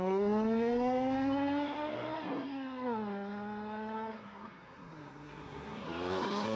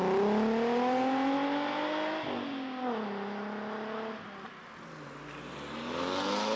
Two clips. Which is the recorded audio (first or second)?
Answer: second